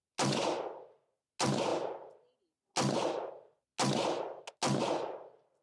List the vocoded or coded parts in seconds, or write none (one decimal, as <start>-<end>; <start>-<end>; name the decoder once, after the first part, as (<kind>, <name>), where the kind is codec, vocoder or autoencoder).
none